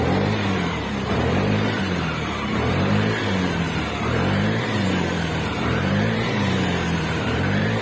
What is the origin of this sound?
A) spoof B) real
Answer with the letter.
A